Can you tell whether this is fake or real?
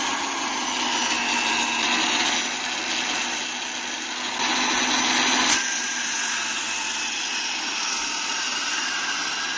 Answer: real